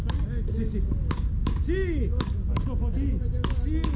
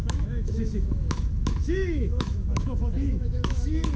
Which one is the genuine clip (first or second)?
first